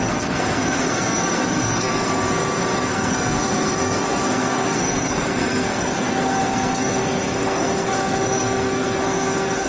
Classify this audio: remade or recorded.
remade